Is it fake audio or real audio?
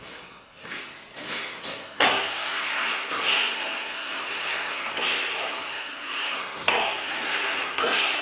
fake